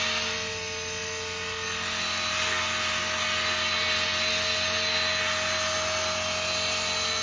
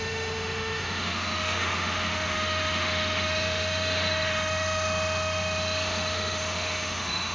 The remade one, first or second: second